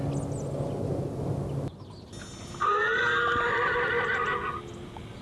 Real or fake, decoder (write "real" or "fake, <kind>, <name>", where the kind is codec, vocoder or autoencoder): real